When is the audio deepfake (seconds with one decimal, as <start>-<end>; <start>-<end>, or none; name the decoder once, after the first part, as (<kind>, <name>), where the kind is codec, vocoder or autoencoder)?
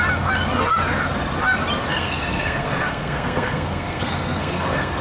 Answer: 1.9-5.0 (codec, SNAC)